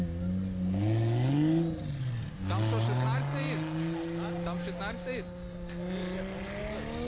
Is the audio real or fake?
real